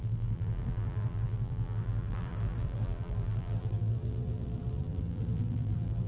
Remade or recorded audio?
remade